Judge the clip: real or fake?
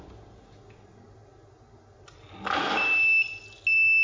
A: real